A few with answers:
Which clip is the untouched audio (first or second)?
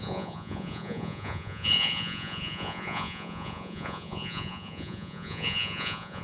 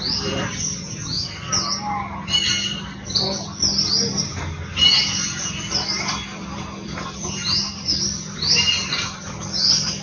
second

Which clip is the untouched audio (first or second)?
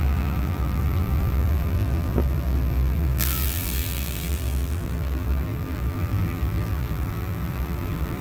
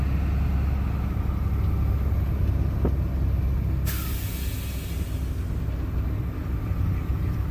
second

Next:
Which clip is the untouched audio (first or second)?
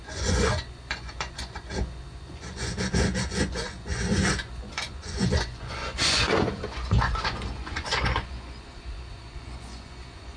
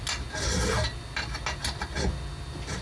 second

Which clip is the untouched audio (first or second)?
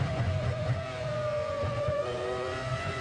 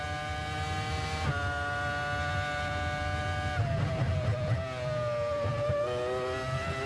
second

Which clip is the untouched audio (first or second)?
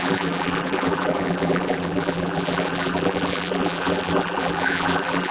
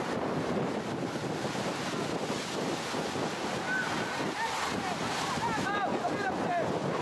second